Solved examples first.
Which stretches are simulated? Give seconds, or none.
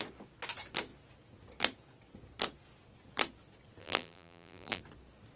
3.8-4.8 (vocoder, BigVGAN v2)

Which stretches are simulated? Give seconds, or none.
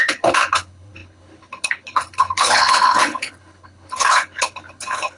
0.0-5.2 (codec, HILCodec)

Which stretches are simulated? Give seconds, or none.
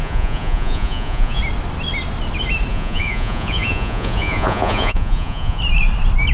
0.0-1.4 (vocoder, Vocos); 2.7-5.6